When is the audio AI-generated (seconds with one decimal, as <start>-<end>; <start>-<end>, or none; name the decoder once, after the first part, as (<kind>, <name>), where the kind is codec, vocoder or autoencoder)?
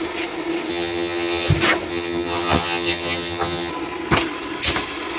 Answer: 0.7-1.5 (vocoder, HiFi-GAN); 1.9-3.7